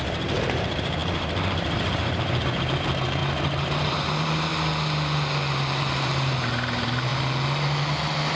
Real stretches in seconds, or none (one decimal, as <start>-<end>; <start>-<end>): 3.2-3.9; 4.5-5.9; 7.1-8.4